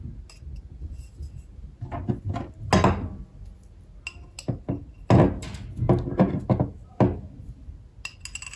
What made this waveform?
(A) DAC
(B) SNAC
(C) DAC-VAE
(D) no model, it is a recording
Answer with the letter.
D